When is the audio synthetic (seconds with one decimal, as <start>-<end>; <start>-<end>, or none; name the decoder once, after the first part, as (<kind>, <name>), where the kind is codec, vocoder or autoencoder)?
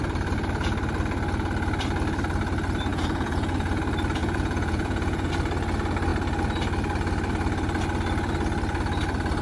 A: 2.9-3.8 (vocoder, Vocos); 4.2-5.3